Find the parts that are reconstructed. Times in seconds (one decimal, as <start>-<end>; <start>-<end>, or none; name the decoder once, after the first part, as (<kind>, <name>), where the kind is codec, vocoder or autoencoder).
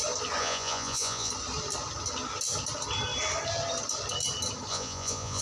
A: 0.4-1.3 (vocoder, Vocos); 4.7-5.4